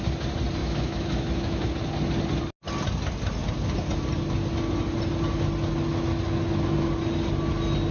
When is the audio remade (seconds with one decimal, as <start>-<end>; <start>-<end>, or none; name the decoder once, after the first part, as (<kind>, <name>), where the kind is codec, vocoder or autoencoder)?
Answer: 0.6-1.7 (autoencoder, DAC-VAE)

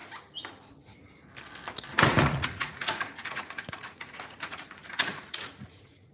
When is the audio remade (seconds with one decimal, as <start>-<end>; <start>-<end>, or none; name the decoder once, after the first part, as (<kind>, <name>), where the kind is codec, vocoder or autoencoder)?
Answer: 2.1-6.1 (vocoder, Vocos)

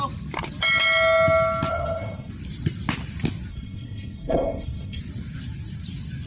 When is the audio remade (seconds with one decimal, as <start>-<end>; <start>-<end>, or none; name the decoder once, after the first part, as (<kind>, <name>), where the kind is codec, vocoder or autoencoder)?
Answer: 1.7-2.3 (codec, SNAC); 3.5-5.0

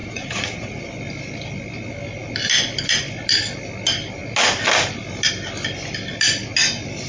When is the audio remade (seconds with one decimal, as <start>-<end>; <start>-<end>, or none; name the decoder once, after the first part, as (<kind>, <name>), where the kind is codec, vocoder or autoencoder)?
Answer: 0.0-0.8 (vocoder, Vocos)

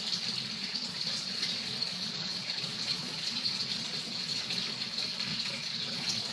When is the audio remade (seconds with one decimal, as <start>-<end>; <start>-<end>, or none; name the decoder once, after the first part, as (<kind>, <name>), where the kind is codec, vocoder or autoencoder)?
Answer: 0.6-4.4 (vocoder, Vocos); 5.3-6.3

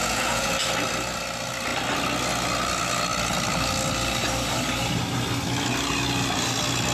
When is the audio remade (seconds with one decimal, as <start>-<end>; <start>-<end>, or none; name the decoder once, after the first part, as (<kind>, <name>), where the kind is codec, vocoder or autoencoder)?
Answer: 0.0-0.5 (vocoder, Vocos)